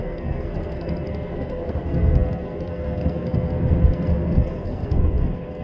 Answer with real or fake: fake